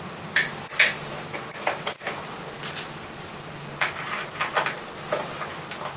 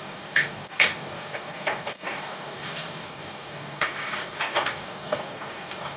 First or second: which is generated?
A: second